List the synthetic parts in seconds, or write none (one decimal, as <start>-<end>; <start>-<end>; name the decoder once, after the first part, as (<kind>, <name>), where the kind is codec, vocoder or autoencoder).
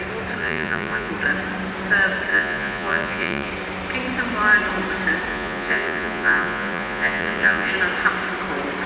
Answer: 0.4-1.1 (vocoder, Vocos); 2.3-3.5; 5.3-7.7